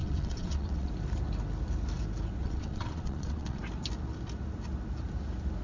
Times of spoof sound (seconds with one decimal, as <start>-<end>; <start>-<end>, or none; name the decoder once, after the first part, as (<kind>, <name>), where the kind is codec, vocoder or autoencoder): 0.0-0.9 (vocoder, WaveNeXt); 2.4-3.6